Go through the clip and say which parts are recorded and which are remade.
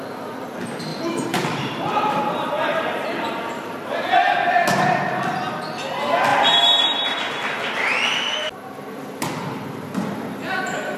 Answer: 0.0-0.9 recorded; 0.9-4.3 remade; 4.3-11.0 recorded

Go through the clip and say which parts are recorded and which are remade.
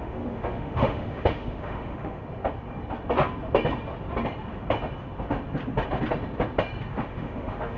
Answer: 0.0-2.2 remade; 2.2-6.9 recorded; 6.9-7.8 remade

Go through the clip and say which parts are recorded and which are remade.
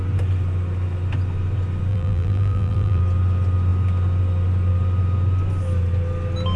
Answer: 0.0-1.9 recorded; 1.9-3.0 remade; 3.0-6.6 recorded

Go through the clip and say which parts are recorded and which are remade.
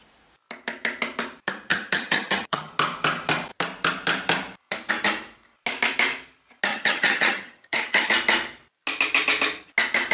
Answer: 0.0-1.7 recorded; 1.7-2.7 remade; 2.7-6.7 recorded; 6.7-8.1 remade; 8.1-10.1 recorded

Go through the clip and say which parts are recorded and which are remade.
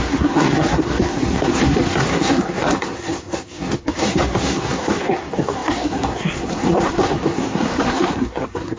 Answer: 0.0-8.8 remade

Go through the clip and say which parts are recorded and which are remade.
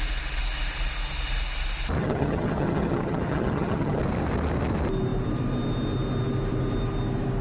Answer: 0.0-2.0 recorded; 2.0-4.0 remade; 4.0-7.4 recorded